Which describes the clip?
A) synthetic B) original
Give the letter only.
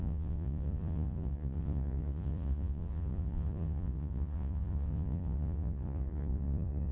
A